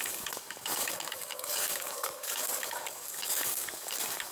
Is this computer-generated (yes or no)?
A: yes